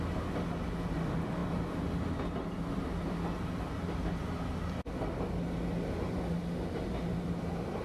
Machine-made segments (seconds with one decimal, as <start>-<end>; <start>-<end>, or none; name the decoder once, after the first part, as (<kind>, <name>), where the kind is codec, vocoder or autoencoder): none